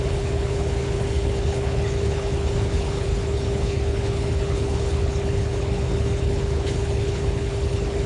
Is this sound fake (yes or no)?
yes